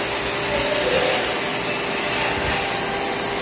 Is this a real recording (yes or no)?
yes